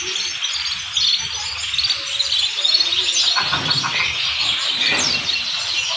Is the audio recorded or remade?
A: recorded